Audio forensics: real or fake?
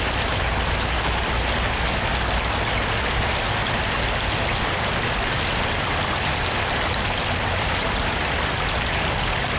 real